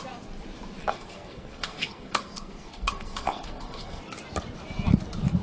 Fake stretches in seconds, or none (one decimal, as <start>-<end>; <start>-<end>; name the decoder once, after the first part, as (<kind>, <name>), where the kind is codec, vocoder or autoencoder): 0.8-4.0 (codec, SNAC)